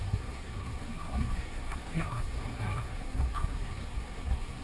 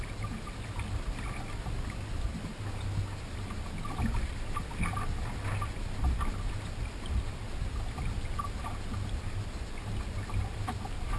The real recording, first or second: second